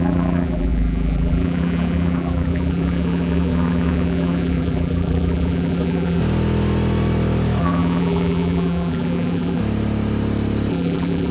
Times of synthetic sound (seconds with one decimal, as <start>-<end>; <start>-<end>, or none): 0.0-6.2; 7.6-9.6; 10.7-11.3

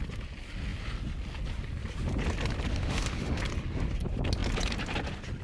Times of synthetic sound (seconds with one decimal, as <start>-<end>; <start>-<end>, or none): 2.7-3.4

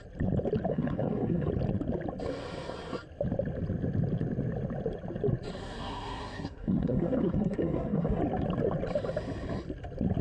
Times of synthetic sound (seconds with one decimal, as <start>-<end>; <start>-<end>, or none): 0.7-1.5; 5.6-8.2

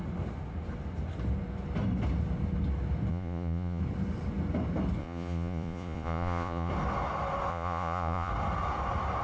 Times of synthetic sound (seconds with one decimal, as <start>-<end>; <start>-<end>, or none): 3.1-3.8; 5.0-6.7; 7.5-8.3

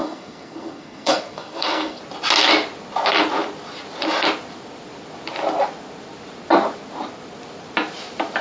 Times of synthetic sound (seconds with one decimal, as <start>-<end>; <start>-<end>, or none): 0.0-2.0

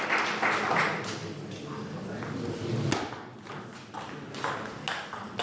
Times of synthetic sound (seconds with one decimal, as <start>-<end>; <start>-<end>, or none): none